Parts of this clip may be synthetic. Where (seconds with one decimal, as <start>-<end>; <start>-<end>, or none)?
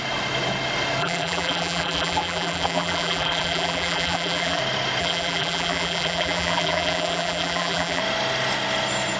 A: 1.0-4.6; 5.0-8.0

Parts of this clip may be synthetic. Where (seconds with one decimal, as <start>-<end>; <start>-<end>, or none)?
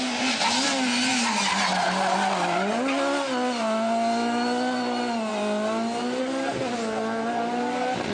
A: 1.1-1.7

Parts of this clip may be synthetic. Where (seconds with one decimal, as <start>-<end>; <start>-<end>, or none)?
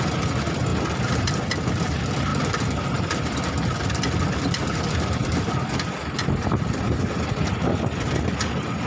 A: 2.3-6.8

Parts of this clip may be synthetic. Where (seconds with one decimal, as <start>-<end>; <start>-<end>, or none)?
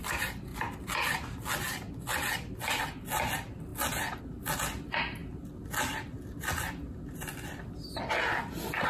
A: none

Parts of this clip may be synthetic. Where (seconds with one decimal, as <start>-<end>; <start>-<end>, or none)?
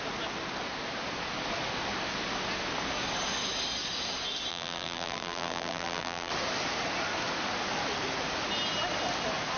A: 4.5-6.3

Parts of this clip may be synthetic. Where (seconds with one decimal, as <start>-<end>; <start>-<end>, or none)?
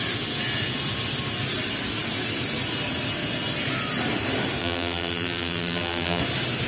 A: 4.6-6.2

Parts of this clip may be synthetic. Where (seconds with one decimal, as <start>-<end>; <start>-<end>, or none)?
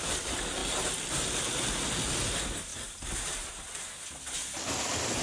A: none